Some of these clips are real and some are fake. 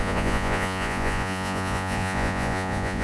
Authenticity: fake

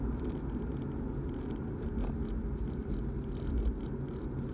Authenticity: real